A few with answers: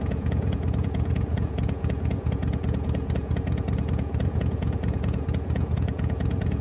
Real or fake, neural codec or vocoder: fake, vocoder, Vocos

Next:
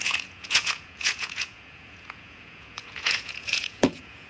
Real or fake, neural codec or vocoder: fake, vocoder, Vocos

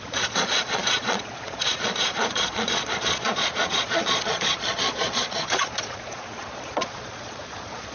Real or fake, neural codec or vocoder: fake, vocoder, Vocos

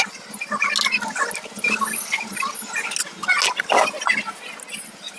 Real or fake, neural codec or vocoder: real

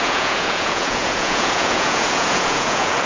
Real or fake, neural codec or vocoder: fake, vocoder, Vocos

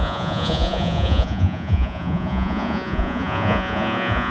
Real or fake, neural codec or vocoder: fake, vocoder, Vocos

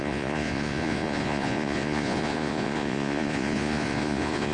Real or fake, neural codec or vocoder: fake, vocoder, Vocos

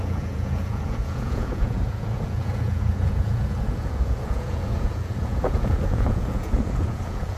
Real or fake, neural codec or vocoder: fake, vocoder, Vocos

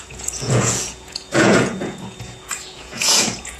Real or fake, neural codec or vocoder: fake, vocoder, Vocos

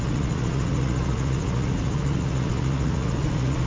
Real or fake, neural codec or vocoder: fake, vocoder, Vocos